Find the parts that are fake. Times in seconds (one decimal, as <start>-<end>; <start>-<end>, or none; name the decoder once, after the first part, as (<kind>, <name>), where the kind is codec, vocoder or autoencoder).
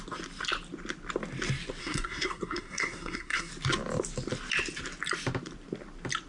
1.8-3.5 (codec, SNAC)